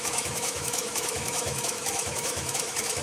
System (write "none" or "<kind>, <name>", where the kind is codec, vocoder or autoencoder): autoencoder, DAC-VAE